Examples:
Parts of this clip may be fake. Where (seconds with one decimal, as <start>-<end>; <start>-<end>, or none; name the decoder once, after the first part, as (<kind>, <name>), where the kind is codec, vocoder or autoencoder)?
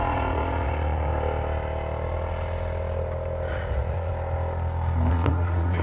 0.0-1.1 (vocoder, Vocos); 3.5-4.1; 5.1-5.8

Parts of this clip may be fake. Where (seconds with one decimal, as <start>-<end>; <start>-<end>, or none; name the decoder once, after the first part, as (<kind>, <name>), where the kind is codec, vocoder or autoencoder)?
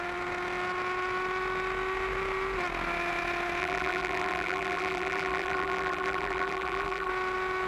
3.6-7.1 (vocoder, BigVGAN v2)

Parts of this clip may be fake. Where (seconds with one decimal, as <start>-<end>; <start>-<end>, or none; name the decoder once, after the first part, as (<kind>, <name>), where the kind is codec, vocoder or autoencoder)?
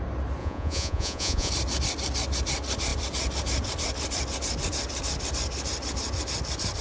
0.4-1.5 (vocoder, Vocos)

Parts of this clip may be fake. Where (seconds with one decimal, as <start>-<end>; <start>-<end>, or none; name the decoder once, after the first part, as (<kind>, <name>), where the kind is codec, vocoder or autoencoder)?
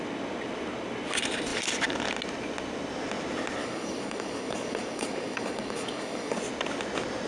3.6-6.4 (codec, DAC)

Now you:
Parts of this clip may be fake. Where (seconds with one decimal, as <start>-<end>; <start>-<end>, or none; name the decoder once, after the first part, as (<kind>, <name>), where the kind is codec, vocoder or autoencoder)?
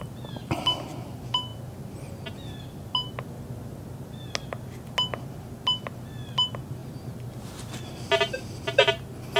6.8-7.7 (vocoder, BigVGAN v2)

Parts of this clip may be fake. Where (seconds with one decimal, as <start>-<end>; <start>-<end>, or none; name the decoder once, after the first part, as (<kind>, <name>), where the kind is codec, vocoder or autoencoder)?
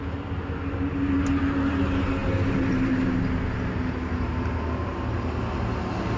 none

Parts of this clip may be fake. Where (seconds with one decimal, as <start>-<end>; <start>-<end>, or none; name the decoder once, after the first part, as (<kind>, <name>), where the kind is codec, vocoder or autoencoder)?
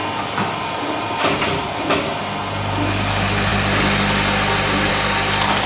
none